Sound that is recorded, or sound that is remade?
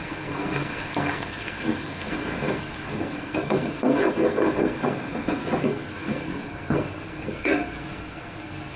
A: remade